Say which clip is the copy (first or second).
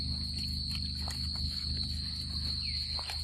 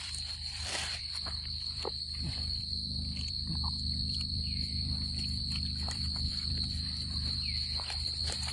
second